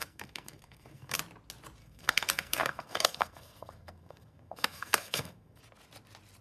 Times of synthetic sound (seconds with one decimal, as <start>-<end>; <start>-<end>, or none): 0.0-1.2; 1.8-5.6